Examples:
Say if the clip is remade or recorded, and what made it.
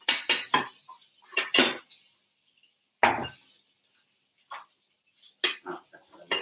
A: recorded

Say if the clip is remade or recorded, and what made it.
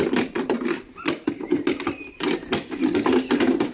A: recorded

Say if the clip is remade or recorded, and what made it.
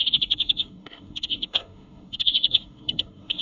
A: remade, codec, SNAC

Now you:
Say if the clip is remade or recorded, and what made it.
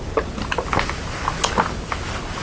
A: recorded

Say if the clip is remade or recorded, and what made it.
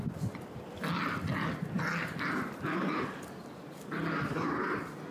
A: recorded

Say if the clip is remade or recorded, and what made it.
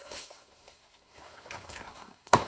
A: remade, codec, SNAC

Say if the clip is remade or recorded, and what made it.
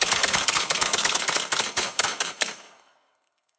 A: remade, codec, SNAC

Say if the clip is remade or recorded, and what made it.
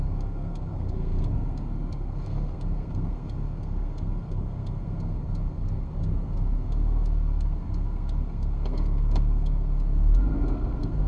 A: remade, codec, SNAC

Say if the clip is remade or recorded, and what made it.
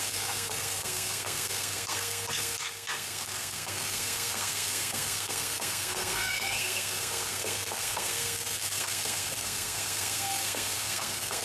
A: remade, codec, SNAC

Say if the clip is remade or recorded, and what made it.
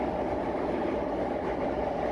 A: recorded